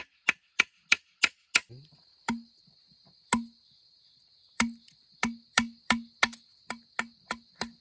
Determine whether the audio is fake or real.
real